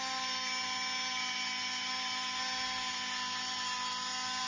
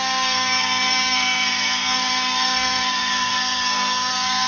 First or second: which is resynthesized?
second